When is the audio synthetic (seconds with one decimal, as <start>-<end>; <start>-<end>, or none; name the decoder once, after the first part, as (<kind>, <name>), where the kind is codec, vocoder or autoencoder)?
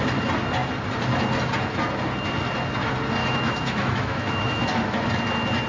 3.2-5.0 (autoencoder, DAC-VAE)